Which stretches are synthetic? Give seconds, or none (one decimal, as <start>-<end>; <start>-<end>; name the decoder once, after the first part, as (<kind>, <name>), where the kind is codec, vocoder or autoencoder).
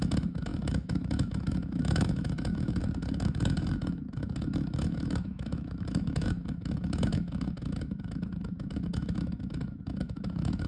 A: 0.0-10.7 (autoencoder, DAC-VAE)